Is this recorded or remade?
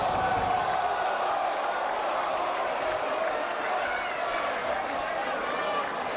recorded